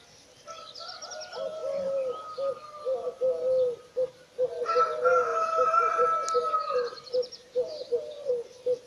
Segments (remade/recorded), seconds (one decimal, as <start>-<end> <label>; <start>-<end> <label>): 0.0-1.6 recorded; 1.6-2.5 remade; 2.5-5.3 recorded; 5.3-8.3 remade; 8.3-8.9 recorded